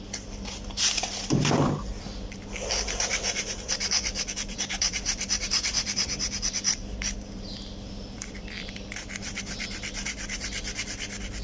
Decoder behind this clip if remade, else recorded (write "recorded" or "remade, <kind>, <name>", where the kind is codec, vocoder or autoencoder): remade, vocoder, BigVGAN v2